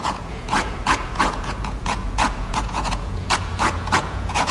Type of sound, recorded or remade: remade